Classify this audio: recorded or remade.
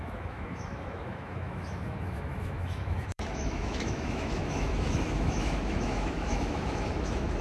remade